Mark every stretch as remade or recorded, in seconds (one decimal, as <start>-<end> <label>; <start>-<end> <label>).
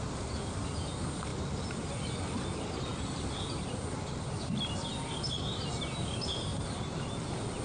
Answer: 0.0-7.6 recorded